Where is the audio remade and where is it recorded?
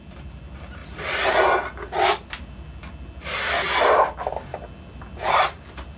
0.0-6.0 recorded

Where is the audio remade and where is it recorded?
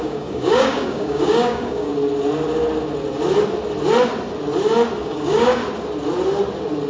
0.0-1.9 remade; 1.9-5.0 recorded; 5.0-5.6 remade; 5.6-6.9 recorded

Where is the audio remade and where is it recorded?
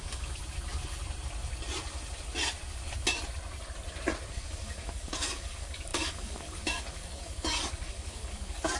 0.0-0.4 remade; 0.4-4.3 recorded; 4.3-8.8 remade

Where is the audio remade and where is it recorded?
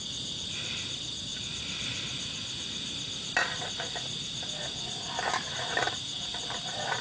0.0-7.0 recorded